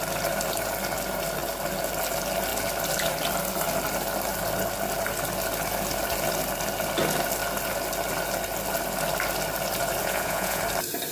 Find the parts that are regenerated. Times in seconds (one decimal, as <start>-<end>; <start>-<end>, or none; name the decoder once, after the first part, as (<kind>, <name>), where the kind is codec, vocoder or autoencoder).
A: 10.0-10.6 (vocoder, Vocos)